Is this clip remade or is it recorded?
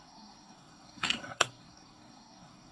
remade